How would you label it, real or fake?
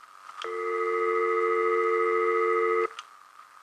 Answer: real